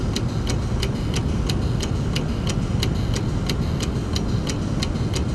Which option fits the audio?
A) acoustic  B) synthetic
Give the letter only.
A